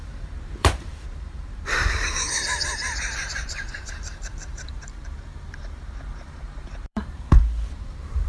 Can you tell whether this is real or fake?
fake